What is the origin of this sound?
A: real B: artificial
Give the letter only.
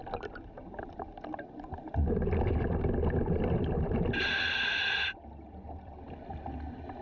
A